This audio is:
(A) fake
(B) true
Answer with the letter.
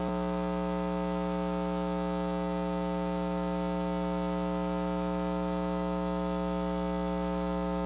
A